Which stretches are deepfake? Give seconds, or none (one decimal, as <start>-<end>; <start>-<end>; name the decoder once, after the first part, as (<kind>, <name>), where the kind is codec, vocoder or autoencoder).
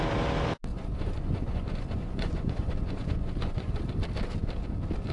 0.7-3.8 (vocoder, Vocos)